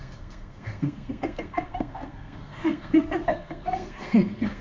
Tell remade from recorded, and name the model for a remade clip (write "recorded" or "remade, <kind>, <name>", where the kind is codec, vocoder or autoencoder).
remade, codec, SNAC